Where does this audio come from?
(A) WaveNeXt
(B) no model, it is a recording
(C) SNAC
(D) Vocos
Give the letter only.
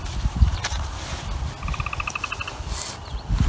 B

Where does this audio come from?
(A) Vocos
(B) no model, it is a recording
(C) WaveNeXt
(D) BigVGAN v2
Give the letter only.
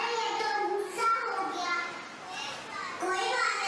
B